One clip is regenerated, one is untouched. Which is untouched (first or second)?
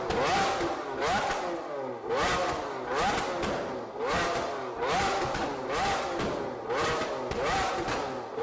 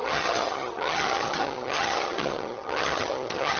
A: first